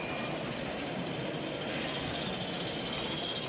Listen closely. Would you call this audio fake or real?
real